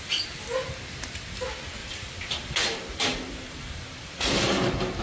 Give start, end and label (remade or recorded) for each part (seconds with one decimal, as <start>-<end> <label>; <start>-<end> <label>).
0.0-1.8 recorded; 1.8-5.0 remade